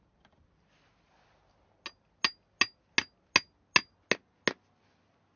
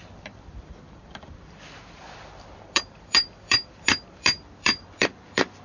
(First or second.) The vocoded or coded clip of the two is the second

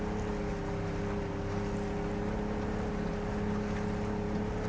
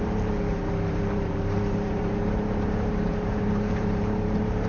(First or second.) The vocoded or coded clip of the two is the second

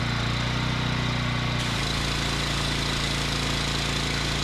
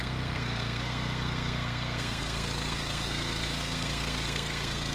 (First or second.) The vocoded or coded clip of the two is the second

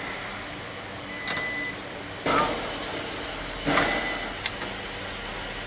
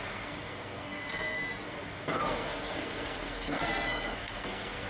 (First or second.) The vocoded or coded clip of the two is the second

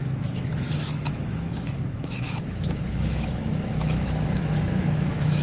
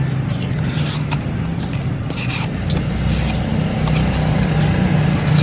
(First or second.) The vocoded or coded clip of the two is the first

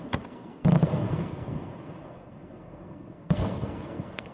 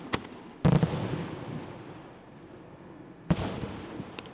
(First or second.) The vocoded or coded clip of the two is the first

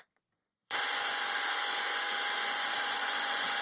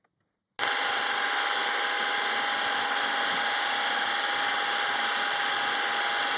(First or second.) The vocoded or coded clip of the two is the first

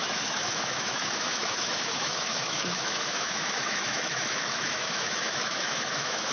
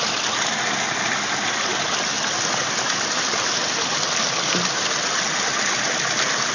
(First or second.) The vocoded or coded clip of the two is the first